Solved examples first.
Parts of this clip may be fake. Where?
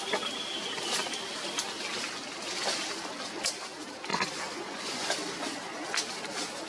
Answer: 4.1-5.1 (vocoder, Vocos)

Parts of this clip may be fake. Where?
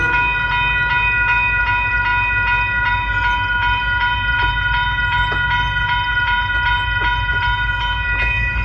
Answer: none